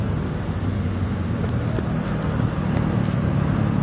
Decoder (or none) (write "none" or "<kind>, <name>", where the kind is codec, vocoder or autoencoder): none